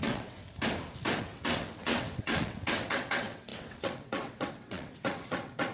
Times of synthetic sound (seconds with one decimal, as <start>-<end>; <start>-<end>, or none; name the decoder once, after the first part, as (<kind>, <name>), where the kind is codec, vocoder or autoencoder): 0.0-0.4 (vocoder, WaveNeXt); 1.2-5.7